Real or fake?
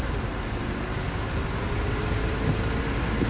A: real